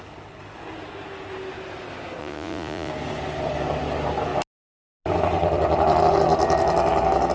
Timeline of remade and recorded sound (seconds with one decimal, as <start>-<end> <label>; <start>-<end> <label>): 0.0-2.2 recorded; 2.2-2.9 remade; 2.9-7.3 recorded